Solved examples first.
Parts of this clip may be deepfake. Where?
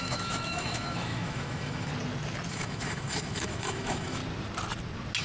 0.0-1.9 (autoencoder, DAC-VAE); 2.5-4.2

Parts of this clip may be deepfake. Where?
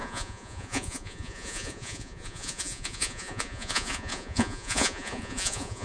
0.0-5.8 (vocoder, Vocos)